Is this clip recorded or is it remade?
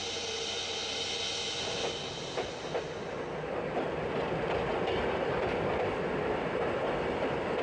recorded